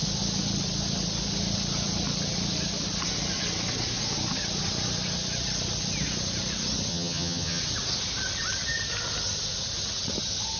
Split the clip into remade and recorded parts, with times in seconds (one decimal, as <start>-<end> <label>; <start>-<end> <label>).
0.0-6.9 recorded; 6.9-7.6 remade; 7.6-10.6 recorded